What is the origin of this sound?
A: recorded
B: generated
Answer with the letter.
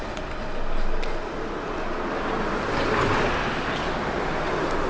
A